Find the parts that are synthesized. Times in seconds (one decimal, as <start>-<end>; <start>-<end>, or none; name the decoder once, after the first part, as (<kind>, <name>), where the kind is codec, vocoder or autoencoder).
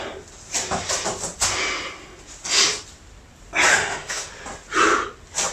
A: 3.7-4.3 (autoencoder, DAC-VAE)